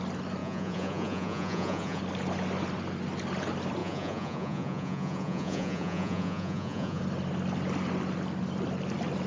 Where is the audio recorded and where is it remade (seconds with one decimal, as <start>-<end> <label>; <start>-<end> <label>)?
0.0-0.4 recorded; 0.4-2.0 remade; 2.0-3.8 recorded; 3.8-7.0 remade; 7.0-9.3 recorded